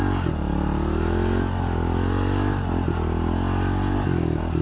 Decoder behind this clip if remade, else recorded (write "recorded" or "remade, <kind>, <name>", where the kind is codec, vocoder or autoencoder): recorded